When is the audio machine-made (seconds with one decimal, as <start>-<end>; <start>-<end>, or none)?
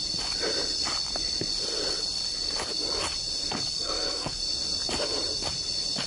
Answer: 3.7-4.4